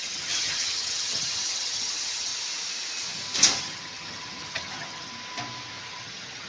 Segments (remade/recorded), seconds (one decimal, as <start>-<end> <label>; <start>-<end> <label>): 0.0-2.3 remade; 2.3-3.6 recorded; 3.6-5.1 remade; 5.1-5.8 recorded; 5.8-6.5 remade